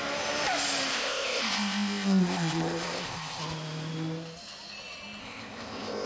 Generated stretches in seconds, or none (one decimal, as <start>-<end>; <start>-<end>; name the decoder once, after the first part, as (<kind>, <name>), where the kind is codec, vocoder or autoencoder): 0.9-3.4 (codec, ZipCodec); 5.2-6.1